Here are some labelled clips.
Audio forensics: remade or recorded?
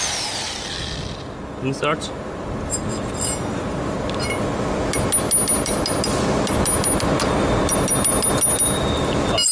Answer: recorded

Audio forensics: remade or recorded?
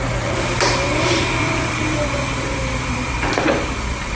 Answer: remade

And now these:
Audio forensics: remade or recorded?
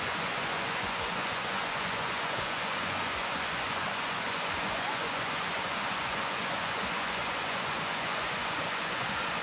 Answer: remade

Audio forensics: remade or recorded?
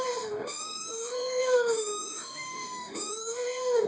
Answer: remade